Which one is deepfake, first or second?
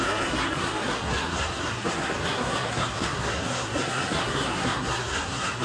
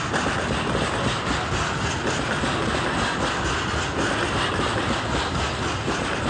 first